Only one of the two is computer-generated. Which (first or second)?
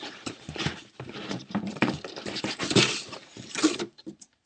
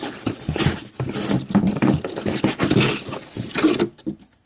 first